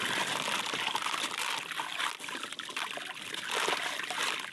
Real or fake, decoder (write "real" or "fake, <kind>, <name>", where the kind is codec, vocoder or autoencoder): real